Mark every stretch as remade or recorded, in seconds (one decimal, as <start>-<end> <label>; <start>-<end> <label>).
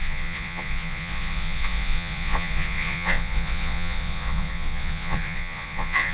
0.0-6.1 remade